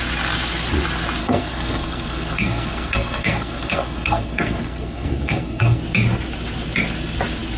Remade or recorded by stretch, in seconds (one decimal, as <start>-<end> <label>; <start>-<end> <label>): 0.0-1.2 recorded; 1.2-5.8 remade; 5.8-7.6 recorded